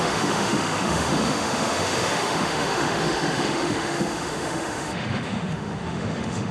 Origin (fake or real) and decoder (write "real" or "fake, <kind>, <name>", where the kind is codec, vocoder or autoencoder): fake, autoencoder, DAC-VAE